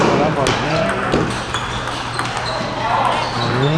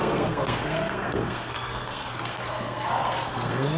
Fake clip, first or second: second